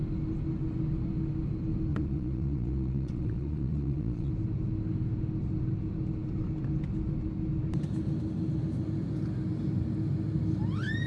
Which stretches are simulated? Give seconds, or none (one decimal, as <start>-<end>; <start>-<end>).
1.9-4.3